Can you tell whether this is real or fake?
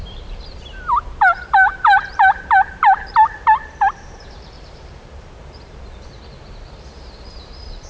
fake